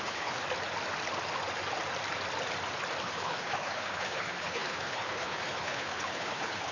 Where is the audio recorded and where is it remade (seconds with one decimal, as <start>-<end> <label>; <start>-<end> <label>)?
0.0-0.4 remade; 0.4-3.0 recorded; 3.0-6.7 remade